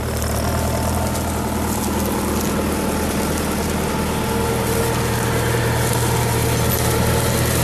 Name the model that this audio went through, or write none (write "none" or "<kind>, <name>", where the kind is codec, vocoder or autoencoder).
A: none